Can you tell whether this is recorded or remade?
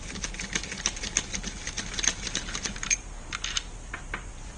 recorded